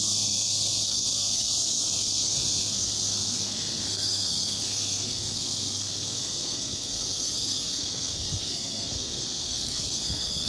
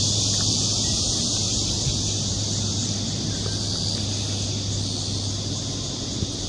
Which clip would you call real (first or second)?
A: second